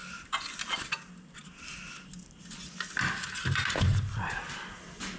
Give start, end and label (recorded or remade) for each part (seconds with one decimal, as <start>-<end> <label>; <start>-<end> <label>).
0.0-5.2 recorded